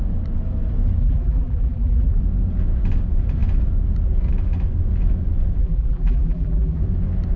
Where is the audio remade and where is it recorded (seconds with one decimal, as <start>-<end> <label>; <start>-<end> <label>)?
0.0-1.0 recorded; 1.0-2.2 remade; 2.2-5.6 recorded; 5.6-6.8 remade; 6.8-7.4 recorded